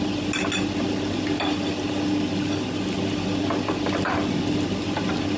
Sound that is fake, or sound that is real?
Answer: real